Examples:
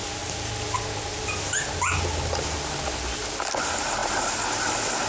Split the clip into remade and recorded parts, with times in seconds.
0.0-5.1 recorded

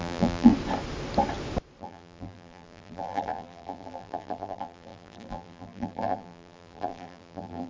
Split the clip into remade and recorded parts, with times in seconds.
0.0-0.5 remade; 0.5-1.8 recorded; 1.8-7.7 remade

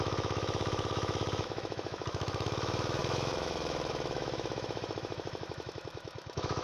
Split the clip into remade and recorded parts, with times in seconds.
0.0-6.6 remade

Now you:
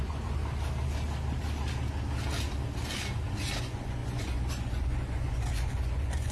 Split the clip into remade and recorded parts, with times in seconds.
0.0-0.4 remade; 0.4-3.6 recorded; 3.6-6.3 remade

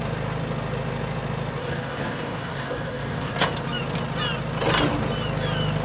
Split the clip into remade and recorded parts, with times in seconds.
0.0-1.6 recorded; 1.6-3.3 remade; 3.3-5.8 recorded

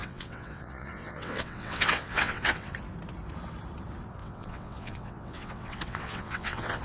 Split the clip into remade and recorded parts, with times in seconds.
0.0-2.7 remade; 2.7-4.2 recorded; 4.2-6.8 remade